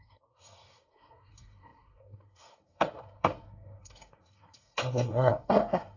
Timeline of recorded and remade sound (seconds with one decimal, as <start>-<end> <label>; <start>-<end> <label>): 0.0-6.0 remade